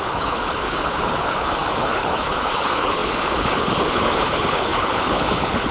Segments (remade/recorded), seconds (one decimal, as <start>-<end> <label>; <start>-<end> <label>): 0.0-5.7 remade

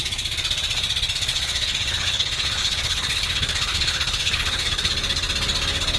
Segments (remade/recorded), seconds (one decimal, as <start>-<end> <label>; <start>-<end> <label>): 0.0-1.3 recorded; 1.3-4.9 remade; 4.9-6.0 recorded

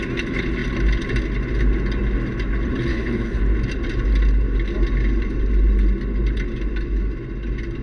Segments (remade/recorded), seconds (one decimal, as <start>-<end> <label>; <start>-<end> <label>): 0.0-2.9 recorded; 2.9-3.4 remade; 3.4-7.8 recorded

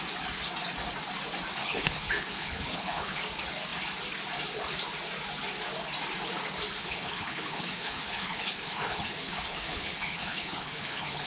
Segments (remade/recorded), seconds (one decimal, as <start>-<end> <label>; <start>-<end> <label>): 0.0-1.6 recorded; 1.6-3.2 remade; 3.2-6.8 recorded; 6.8-11.3 remade

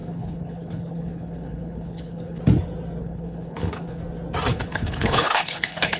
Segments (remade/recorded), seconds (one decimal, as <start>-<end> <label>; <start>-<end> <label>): 0.0-2.4 remade; 2.4-3.0 recorded; 3.0-4.0 remade; 4.0-4.5 recorded; 4.5-6.0 remade

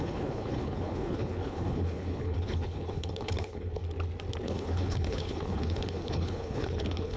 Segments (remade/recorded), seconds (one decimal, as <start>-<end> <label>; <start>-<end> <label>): 0.0-3.8 remade; 3.8-4.4 recorded; 4.4-7.2 remade

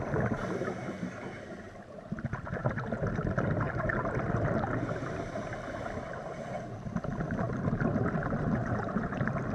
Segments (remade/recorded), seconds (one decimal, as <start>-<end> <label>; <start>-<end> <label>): 0.0-9.5 recorded

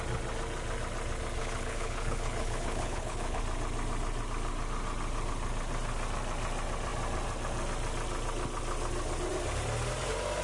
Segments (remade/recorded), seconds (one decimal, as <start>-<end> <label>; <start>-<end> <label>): 0.0-1.4 recorded; 1.4-3.4 remade; 3.4-10.4 recorded